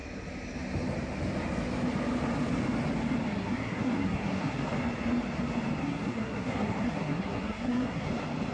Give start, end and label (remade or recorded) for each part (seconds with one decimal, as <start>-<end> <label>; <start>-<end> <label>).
0.0-3.3 recorded; 3.3-4.6 remade; 4.6-5.8 recorded; 5.8-8.1 remade; 8.1-8.5 recorded